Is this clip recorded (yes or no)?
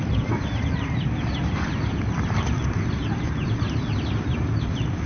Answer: no